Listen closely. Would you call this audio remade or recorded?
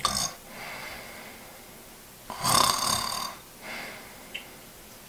recorded